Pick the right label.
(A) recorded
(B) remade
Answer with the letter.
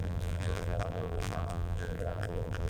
B